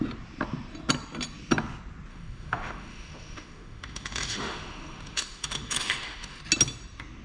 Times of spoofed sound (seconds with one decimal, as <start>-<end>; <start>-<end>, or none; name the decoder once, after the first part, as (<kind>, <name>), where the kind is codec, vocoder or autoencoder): 2.1-6.4 (autoencoder, DAC-VAE)